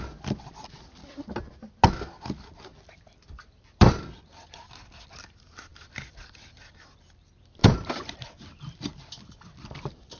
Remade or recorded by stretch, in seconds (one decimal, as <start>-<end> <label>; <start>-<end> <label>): 0.0-2.7 recorded; 2.7-4.2 remade; 4.2-5.7 recorded; 5.7-7.0 remade; 7.0-7.6 recorded; 7.6-10.2 remade